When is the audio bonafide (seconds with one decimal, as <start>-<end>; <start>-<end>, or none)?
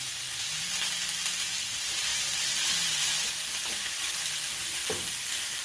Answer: 0.0-5.6